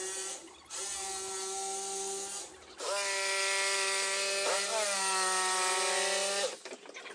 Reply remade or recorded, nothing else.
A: recorded